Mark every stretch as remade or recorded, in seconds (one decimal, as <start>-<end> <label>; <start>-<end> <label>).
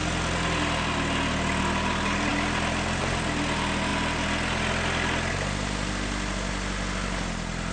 0.0-7.7 recorded